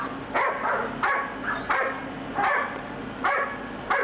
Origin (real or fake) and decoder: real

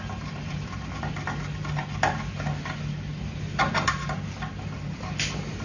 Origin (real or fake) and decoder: real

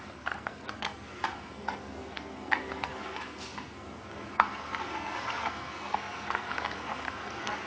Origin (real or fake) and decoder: fake, codec, SNAC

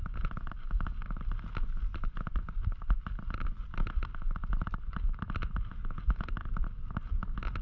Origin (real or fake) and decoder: real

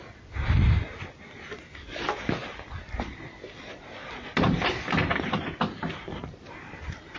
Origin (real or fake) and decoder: real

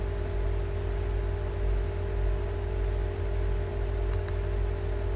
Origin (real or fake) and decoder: real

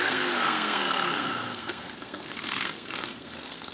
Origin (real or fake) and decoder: fake, codec, SNAC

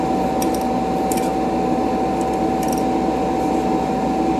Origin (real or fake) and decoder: real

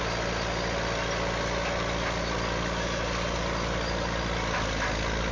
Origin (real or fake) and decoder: real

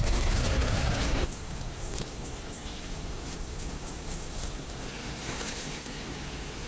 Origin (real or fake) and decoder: fake, codec, SNAC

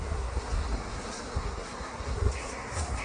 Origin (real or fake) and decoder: fake, codec, SNAC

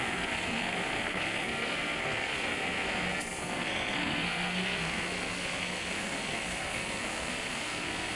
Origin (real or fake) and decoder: fake, codec, SNAC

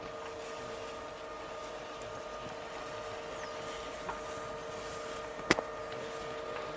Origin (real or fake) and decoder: real